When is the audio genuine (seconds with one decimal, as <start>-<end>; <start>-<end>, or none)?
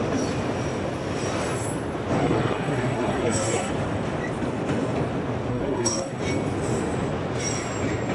0.0-2.2; 3.7-5.5; 6.2-8.1